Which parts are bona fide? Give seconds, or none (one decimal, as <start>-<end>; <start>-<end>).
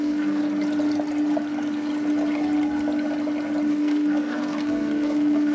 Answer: 0.4-3.7